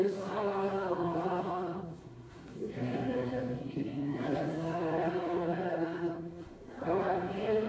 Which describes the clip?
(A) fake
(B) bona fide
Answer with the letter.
A